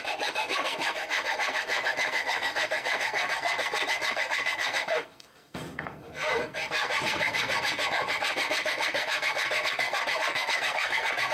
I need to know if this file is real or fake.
fake